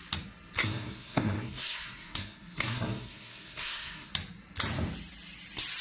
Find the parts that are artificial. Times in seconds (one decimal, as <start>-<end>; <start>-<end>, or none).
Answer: 0.6-4.1